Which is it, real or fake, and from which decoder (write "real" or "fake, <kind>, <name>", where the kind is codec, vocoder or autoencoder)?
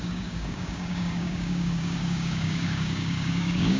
fake, codec, DAC